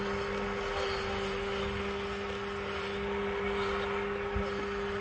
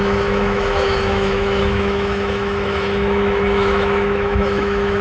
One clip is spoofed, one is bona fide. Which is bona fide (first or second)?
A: first